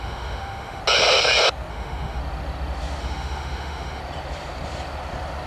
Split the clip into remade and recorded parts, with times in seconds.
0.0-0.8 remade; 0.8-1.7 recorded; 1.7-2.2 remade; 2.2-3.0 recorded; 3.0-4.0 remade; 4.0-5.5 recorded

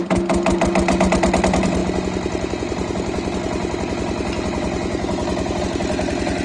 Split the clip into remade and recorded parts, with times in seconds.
0.0-1.8 remade; 1.8-5.6 recorded; 5.6-6.4 remade

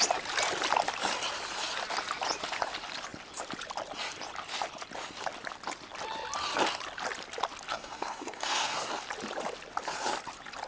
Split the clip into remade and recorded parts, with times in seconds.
0.0-7.7 recorded; 7.7-8.9 remade; 8.9-10.7 recorded

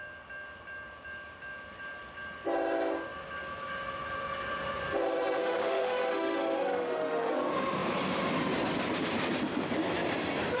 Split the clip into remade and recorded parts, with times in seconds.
0.0-5.4 recorded; 5.4-7.3 remade; 7.3-10.6 recorded

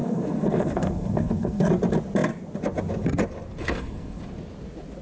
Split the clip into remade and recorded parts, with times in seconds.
0.0-1.7 remade; 1.7-3.6 recorded; 3.6-4.2 remade; 4.2-5.0 recorded

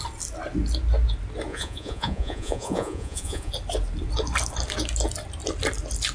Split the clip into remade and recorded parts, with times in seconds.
0.0-1.5 recorded; 1.5-3.5 remade; 3.5-6.1 recorded